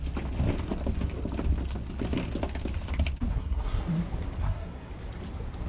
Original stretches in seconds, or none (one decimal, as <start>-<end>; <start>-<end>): 0.0-3.3; 3.8-4.4; 4.9-5.7